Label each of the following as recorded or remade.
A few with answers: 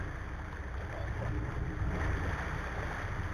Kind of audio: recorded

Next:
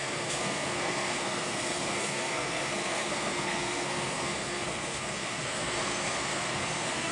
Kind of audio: remade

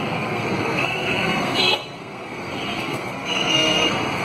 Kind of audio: remade